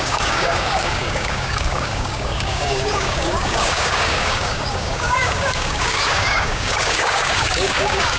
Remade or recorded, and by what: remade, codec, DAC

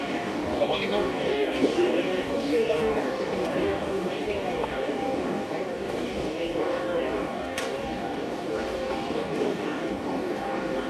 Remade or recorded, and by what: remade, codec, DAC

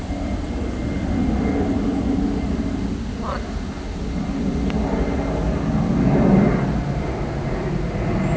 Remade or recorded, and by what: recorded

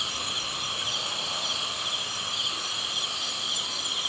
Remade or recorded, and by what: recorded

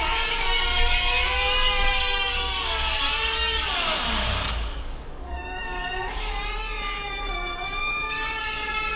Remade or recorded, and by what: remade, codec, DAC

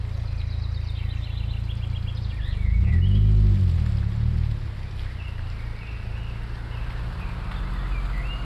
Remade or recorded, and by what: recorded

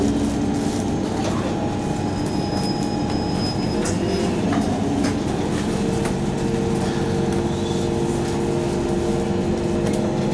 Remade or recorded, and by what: recorded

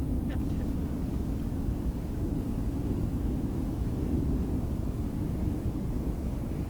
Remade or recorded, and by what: remade, codec, DAC